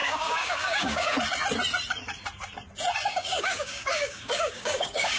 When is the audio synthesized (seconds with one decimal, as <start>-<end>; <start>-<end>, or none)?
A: 0.0-1.1; 3.1-5.2